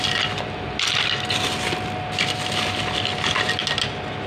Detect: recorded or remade recorded